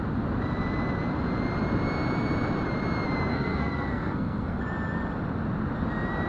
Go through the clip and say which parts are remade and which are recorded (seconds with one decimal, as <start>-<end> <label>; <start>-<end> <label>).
0.0-3.3 recorded; 3.3-4.6 remade; 4.6-6.3 recorded